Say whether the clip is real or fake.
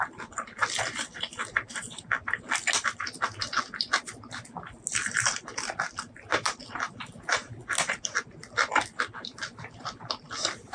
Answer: real